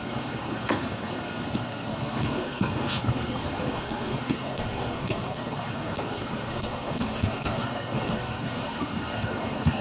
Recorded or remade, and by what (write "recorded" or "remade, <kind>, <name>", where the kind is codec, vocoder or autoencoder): remade, codec, SNAC